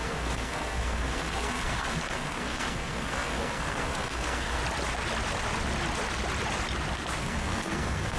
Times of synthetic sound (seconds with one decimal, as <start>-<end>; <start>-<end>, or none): 0.0-4.6; 7.2-8.2